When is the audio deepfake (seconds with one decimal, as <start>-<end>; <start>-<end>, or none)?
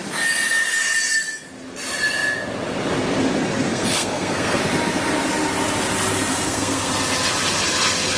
3.7-4.6; 6.3-6.9